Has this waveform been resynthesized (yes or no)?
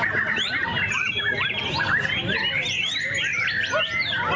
no